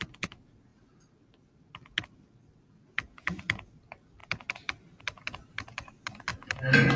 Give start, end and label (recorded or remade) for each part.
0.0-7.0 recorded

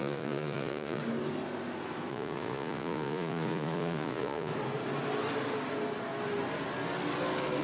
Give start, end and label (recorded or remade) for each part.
0.0-1.0 remade; 1.0-2.1 recorded; 2.1-4.5 remade; 4.5-7.6 recorded

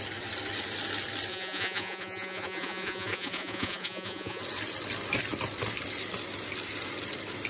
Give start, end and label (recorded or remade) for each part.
0.0-1.3 recorded; 1.3-4.4 remade; 4.4-7.5 recorded

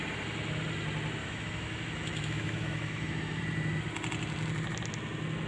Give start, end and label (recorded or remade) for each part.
0.0-1.2 recorded; 1.2-3.4 remade; 3.4-5.5 recorded

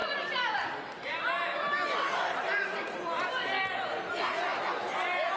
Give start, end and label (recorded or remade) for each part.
0.0-5.4 recorded

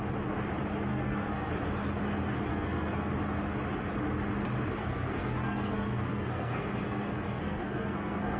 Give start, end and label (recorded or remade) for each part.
0.0-0.9 recorded; 0.9-1.5 remade; 1.5-2.5 recorded; 2.5-3.1 remade; 3.1-4.8 recorded; 4.8-8.4 remade

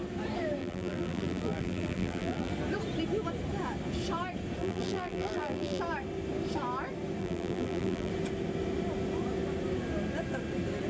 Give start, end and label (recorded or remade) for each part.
0.0-0.6 recorded; 0.6-2.5 remade; 2.5-4.6 recorded; 4.6-5.8 remade; 5.8-7.2 recorded; 7.2-8.1 remade; 8.1-10.9 recorded

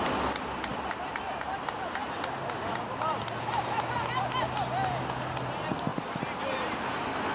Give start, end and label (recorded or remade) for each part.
0.0-7.3 recorded